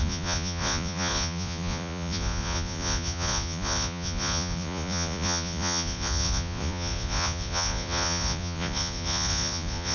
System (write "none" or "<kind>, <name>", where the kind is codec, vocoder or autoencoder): vocoder, Vocos